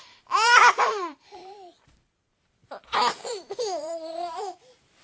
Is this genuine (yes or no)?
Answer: no